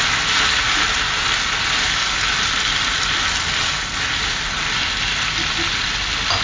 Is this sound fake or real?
real